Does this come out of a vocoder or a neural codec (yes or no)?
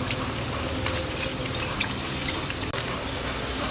no